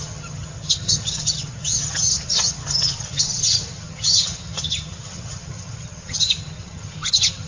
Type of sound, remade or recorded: remade